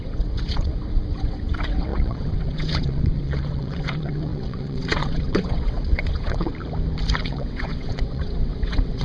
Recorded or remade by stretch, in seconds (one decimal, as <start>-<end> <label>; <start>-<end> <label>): 0.0-6.5 remade; 6.5-7.2 recorded; 7.2-9.0 remade